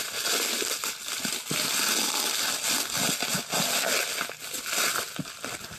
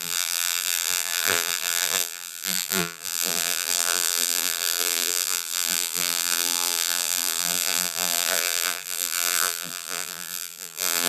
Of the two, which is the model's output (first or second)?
second